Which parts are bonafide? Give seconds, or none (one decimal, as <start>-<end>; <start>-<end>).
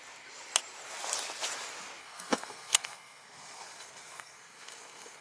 0.0-2.0